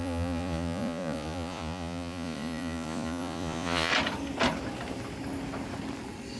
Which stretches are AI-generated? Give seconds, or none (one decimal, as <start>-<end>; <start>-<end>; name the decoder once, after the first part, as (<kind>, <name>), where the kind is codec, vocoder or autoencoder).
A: 0.0-3.9 (vocoder, Vocos)